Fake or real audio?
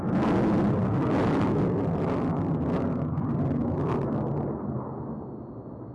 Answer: real